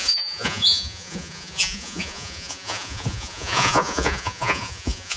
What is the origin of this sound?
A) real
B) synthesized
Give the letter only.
B